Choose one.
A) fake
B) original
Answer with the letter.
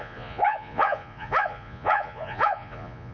A